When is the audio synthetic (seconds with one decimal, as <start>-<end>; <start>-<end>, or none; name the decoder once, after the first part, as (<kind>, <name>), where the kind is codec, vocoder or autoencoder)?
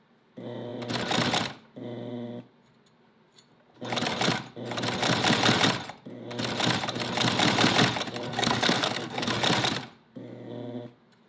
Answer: 8.3-9.3 (codec, SNAC)